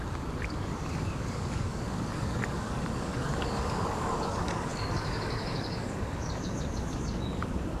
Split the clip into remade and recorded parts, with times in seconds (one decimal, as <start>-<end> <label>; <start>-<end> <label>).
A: 0.0-7.8 remade